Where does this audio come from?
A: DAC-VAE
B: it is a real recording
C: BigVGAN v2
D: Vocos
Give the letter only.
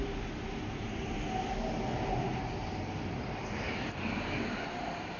B